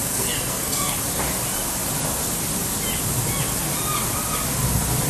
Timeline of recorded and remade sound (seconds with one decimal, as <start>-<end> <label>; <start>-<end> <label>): 0.0-0.9 remade; 0.9-5.1 recorded